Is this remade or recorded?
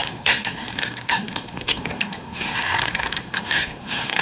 remade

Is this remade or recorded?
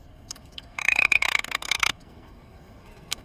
remade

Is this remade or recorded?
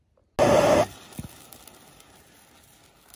recorded